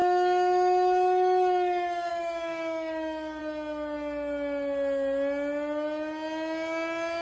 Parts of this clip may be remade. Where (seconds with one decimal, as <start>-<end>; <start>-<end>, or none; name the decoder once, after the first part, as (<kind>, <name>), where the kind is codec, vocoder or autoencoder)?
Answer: 0.0-3.4 (autoencoder, DAC-VAE)